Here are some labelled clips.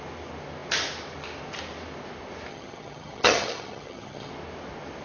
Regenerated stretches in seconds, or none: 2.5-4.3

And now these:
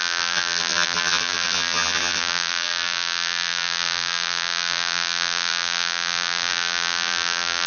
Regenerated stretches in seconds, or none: 0.0-7.7